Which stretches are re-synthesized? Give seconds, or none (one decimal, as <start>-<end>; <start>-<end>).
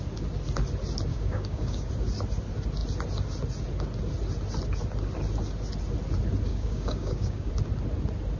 1.1-1.9; 6.5-7.5